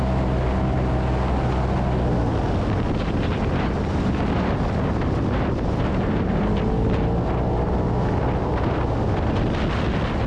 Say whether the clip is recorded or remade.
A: recorded